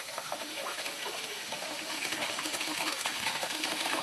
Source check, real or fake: fake